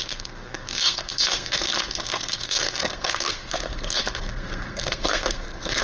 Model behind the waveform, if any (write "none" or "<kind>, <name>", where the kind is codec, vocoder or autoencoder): codec, SNAC